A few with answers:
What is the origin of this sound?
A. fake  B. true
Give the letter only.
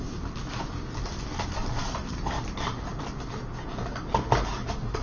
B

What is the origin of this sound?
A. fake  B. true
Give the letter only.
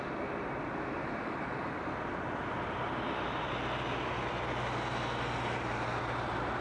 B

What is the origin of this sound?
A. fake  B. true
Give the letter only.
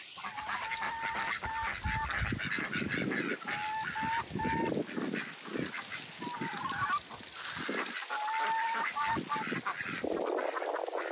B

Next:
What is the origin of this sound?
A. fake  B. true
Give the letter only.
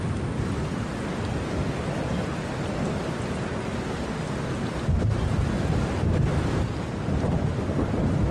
B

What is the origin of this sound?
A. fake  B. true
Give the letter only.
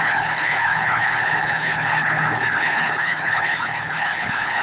A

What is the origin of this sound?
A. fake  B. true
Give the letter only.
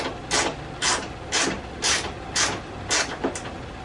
B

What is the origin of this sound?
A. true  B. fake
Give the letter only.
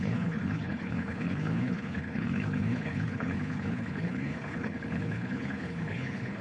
B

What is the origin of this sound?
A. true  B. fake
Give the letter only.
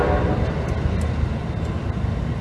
A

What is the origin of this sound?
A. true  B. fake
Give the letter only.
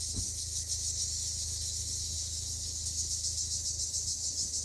B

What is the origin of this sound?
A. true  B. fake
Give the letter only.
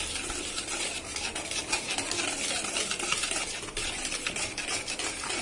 A